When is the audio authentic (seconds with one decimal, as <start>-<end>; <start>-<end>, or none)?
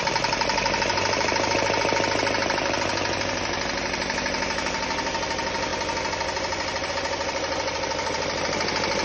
0.0-9.0